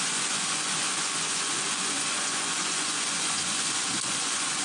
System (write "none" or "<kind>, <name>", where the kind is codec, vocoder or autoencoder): vocoder, Vocos